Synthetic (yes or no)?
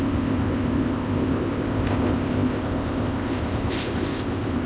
yes